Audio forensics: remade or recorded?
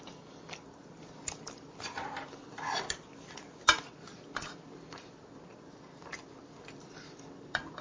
remade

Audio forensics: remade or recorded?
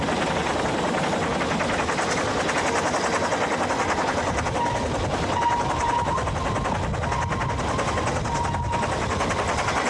recorded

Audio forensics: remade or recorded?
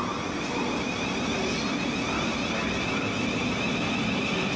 recorded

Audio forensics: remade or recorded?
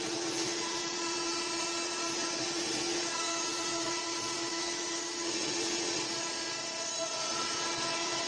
remade